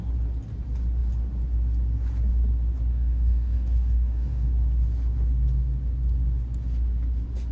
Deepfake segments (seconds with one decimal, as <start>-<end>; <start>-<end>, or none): 2.9-4.5